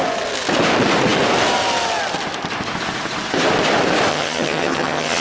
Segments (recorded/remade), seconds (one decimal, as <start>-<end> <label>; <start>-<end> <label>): 0.0-4.1 recorded; 4.1-5.2 remade